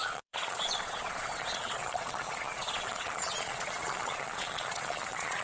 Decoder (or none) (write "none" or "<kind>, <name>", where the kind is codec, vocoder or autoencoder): vocoder, Vocos